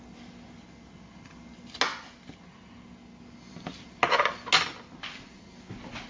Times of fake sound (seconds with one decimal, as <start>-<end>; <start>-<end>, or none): none